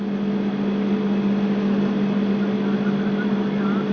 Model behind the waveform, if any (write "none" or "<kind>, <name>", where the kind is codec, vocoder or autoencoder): none